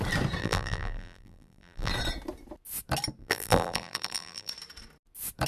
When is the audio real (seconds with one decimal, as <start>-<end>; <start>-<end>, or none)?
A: 0.0-0.4; 1.9-3.2; 4.5-5.5